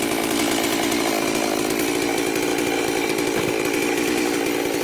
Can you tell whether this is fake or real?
real